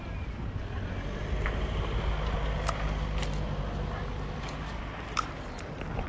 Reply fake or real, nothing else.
real